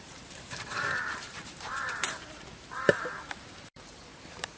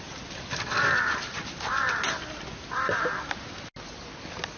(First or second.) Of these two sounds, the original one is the second